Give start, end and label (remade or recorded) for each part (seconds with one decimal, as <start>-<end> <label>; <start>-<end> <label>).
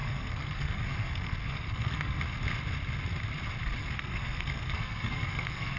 0.0-2.2 remade; 2.2-3.8 recorded; 3.8-5.8 remade